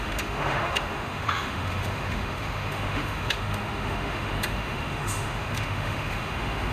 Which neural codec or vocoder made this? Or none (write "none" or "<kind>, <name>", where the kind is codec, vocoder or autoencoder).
autoencoder, DAC-VAE